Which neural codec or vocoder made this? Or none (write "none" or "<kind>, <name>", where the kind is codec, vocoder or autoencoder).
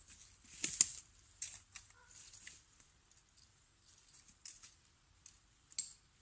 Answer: none